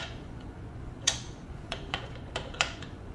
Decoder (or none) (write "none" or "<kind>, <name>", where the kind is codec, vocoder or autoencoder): vocoder, Vocos